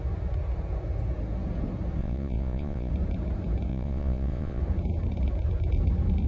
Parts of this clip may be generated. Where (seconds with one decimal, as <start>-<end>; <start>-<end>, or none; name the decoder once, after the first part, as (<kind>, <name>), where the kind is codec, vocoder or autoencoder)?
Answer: 2.0-2.9 (vocoder, Vocos); 3.7-4.6

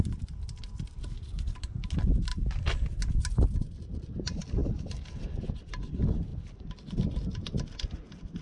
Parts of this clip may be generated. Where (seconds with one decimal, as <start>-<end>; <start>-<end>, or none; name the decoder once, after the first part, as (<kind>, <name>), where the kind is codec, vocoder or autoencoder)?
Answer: none

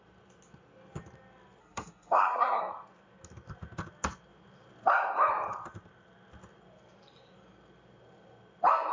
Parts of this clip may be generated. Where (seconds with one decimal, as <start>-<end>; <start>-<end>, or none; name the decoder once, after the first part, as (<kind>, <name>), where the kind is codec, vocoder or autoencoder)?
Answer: 1.6-2.6 (codec, SNAC)

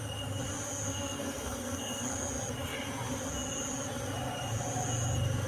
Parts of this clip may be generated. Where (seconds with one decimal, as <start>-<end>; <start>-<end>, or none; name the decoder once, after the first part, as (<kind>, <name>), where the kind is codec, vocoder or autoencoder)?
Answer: 0.9-2.3 (codec, SNAC)

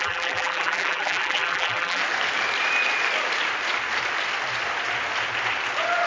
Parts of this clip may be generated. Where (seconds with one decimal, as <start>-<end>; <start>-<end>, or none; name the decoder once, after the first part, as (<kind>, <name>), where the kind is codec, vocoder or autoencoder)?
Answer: 0.0-2.0 (vocoder, BigVGAN v2)